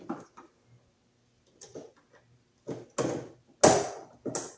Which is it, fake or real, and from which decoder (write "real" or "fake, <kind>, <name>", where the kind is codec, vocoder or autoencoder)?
real